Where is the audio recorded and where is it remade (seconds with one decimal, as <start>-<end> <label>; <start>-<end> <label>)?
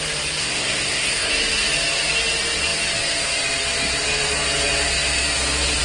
0.0-0.4 recorded; 0.4-1.3 remade; 1.3-5.8 recorded